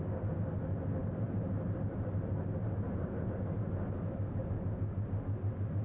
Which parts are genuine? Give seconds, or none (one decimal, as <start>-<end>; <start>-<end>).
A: 0.0-1.0; 4.5-5.8